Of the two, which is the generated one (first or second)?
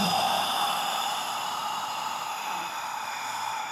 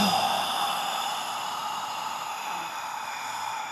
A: first